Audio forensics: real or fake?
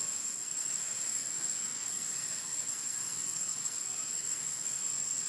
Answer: fake